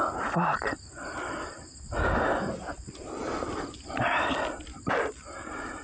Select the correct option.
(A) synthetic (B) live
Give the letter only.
B